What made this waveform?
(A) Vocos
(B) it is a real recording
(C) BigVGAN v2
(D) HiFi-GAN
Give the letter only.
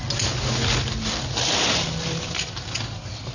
B